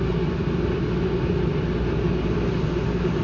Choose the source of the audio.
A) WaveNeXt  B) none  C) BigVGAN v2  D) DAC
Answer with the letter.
B